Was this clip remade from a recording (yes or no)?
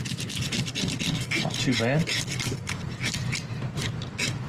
no